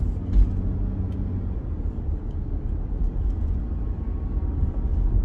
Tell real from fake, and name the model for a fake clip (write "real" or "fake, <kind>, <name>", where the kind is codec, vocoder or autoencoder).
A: real